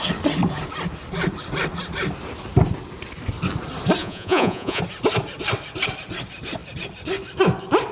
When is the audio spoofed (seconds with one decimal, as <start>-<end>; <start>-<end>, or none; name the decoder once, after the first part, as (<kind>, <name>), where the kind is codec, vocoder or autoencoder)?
4.0-4.8 (vocoder, Vocos)